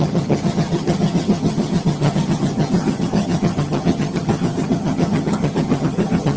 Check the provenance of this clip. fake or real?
fake